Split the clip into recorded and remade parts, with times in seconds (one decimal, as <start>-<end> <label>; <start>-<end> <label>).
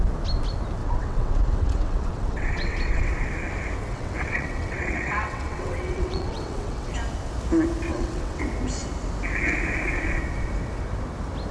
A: 0.0-0.8 recorded; 0.8-3.1 remade; 3.1-3.9 recorded; 3.9-6.9 remade; 6.9-7.9 recorded; 7.9-8.4 remade; 8.4-11.5 recorded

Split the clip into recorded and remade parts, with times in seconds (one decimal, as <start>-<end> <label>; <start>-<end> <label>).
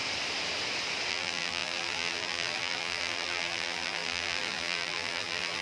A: 0.0-1.1 recorded; 1.1-5.6 remade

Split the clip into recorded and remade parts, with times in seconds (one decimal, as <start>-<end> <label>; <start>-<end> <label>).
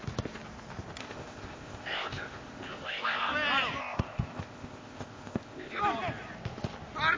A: 0.0-1.0 recorded; 1.0-3.3 remade; 3.3-3.8 recorded; 3.8-5.8 remade; 5.8-7.2 recorded